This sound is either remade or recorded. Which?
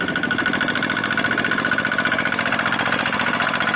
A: recorded